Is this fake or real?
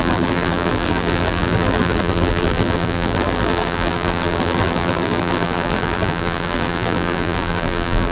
fake